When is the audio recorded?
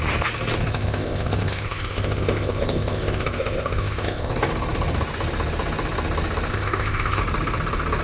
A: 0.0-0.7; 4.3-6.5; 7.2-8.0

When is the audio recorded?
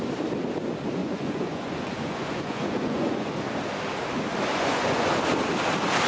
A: 0.0-1.0; 3.4-4.5; 5.2-6.1